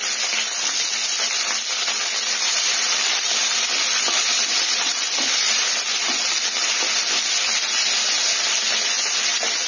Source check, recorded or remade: recorded